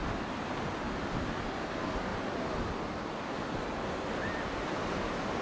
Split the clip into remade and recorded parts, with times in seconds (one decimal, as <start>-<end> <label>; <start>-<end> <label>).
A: 0.0-1.6 remade; 1.6-2.1 recorded; 2.1-5.4 remade

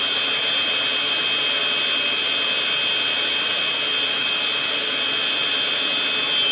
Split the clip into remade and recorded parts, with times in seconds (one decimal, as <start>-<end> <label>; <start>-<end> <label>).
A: 0.0-6.5 recorded